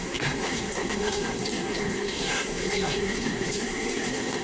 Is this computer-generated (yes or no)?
yes